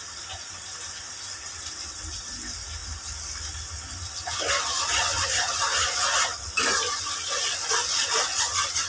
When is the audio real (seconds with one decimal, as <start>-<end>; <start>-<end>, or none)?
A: 0.0-8.9